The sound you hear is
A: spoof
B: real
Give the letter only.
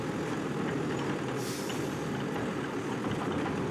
B